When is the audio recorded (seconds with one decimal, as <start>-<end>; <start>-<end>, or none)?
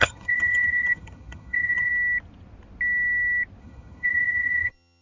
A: 1.9-3.6